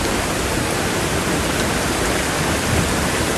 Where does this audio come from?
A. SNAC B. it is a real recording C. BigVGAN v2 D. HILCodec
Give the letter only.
B